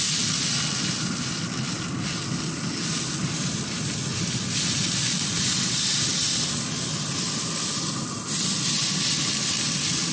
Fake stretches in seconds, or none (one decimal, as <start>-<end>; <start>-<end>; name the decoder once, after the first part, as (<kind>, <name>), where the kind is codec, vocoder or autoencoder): none